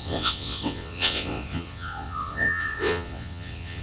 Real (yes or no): no